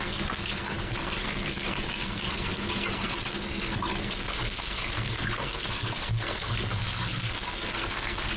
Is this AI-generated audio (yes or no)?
yes